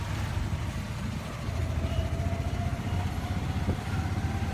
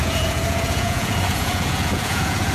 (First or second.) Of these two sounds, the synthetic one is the second